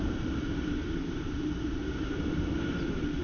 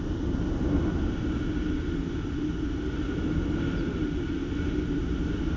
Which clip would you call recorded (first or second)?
second